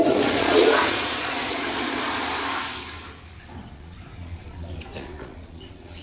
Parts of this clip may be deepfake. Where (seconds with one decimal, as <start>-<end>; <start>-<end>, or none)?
0.0-2.0; 3.7-6.0